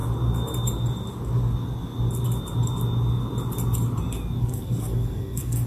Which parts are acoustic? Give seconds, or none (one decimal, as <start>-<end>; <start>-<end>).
0.0-4.4